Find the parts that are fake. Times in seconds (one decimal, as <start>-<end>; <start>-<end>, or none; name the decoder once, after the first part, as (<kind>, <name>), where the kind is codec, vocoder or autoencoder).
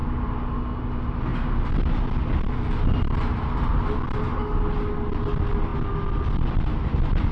none